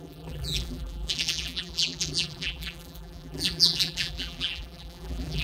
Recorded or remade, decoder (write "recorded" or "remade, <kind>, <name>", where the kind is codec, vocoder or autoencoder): remade, vocoder, BigVGAN v2